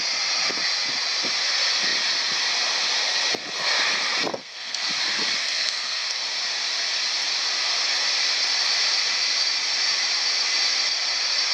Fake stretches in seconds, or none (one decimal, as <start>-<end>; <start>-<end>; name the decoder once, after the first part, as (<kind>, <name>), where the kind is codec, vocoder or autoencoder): 4.3-4.9 (codec, SNAC); 5.4-6.2